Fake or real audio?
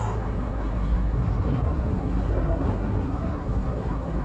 fake